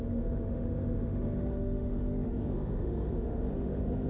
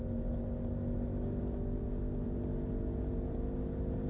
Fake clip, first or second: first